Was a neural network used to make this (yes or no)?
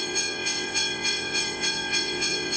yes